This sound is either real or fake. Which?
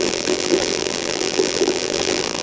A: fake